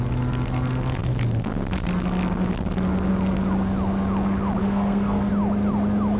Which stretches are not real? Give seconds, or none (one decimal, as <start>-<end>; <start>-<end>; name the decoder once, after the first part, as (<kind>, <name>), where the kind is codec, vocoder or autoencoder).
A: 4.6-5.3 (codec, SNAC)